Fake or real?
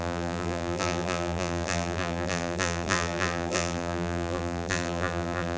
fake